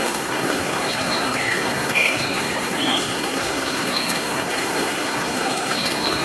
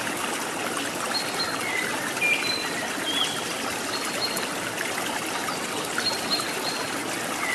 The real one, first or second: second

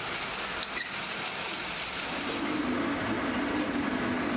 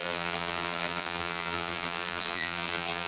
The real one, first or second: first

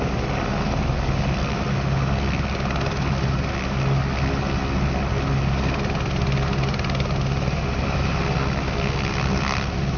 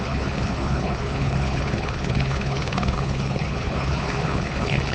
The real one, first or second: first